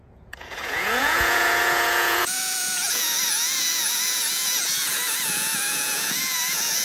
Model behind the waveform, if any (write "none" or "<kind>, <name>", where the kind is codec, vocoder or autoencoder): vocoder, Vocos